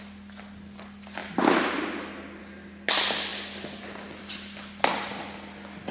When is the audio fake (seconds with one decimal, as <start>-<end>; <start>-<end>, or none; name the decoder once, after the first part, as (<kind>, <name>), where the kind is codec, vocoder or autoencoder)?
none